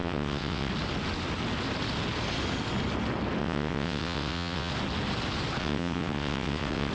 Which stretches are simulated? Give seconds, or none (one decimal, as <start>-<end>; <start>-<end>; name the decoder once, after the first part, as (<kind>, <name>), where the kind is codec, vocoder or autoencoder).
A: 0.0-0.7 (vocoder, WaveNeXt); 3.4-4.7; 5.6-6.9